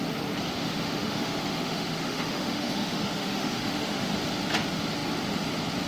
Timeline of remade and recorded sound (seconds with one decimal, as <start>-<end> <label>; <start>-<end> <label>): 0.0-0.6 recorded; 0.6-4.1 remade; 4.1-5.9 recorded